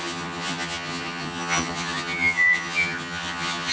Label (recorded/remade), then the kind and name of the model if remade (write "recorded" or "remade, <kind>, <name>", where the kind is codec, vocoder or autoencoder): remade, vocoder, HiFi-GAN